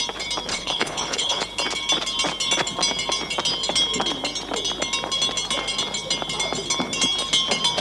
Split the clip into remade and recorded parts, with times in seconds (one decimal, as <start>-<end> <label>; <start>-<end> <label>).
0.0-0.5 recorded; 0.5-1.4 remade; 1.4-7.8 recorded